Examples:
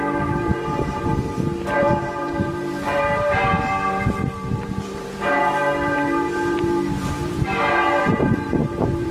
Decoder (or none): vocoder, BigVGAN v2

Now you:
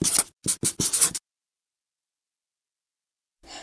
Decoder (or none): none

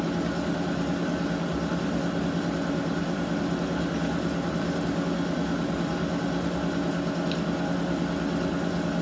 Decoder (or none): none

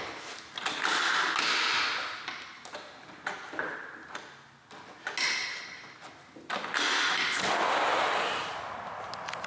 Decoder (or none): none